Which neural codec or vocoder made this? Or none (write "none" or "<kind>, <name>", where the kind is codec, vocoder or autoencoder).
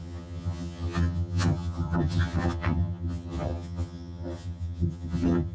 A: vocoder, HiFi-GAN